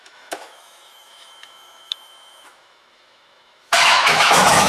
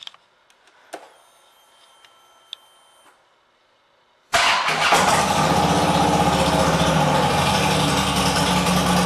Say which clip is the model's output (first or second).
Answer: first